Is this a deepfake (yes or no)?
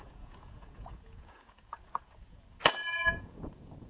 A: yes